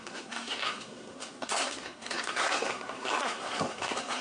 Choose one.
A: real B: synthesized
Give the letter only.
B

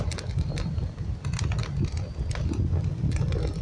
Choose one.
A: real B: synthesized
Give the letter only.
A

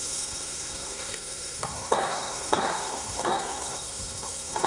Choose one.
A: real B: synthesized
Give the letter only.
B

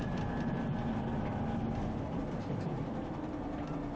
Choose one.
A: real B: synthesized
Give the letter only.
A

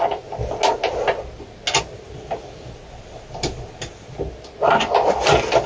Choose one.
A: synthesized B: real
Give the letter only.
B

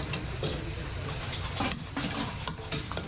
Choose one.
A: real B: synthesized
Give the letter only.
A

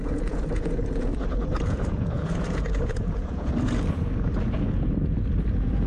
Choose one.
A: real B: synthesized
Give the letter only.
B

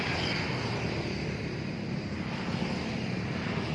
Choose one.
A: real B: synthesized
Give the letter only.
A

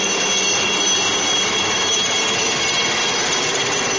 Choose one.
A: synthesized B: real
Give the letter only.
B